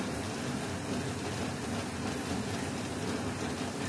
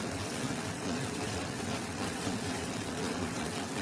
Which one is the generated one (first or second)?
second